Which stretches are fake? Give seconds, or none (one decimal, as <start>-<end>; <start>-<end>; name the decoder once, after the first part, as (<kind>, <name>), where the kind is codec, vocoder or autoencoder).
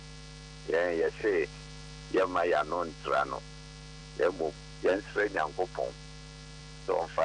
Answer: none